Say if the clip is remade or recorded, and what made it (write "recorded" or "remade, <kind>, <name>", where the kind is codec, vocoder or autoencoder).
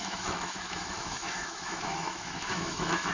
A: remade, autoencoder, DAC-VAE